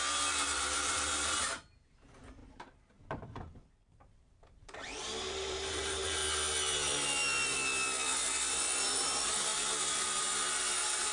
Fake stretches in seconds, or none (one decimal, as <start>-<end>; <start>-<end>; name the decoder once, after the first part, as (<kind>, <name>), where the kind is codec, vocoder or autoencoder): 0.0-6.2 (vocoder, BigVGAN v2); 8.8-11.1